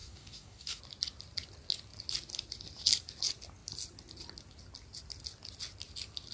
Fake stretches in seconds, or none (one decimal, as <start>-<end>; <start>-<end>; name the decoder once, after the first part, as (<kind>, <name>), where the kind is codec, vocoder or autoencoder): 0.0-0.8 (codec, DAC)